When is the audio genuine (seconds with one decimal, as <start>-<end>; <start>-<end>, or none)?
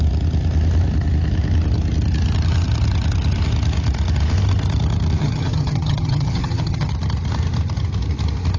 0.0-5.2; 6.9-8.6